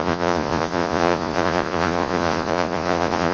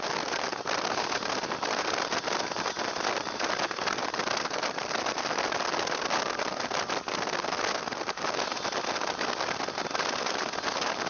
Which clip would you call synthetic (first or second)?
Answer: first